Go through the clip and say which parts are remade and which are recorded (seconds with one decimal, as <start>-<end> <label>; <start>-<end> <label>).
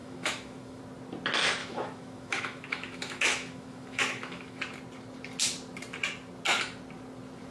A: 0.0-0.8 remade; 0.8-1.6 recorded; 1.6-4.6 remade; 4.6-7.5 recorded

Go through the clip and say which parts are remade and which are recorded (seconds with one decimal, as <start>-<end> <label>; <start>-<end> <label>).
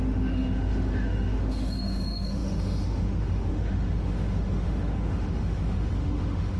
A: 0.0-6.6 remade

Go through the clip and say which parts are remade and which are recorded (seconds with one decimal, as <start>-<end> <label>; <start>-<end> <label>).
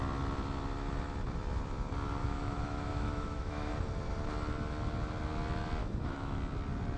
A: 0.0-2.2 recorded; 2.2-3.7 remade; 3.7-5.8 recorded; 5.8-6.4 remade; 6.4-7.0 recorded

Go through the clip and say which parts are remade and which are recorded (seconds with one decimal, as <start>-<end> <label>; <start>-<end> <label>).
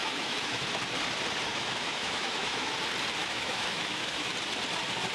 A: 0.0-0.6 remade; 0.6-1.5 recorded; 1.5-2.7 remade; 2.7-3.2 recorded; 3.2-4.3 remade; 4.3-5.1 recorded